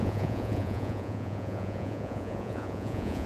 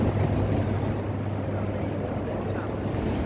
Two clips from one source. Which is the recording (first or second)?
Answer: second